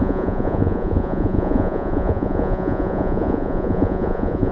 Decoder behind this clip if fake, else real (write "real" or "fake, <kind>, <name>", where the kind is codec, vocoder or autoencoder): fake, vocoder, Vocos